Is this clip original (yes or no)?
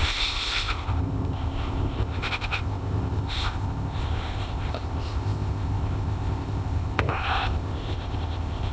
no